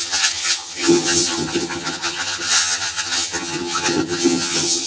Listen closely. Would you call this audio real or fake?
fake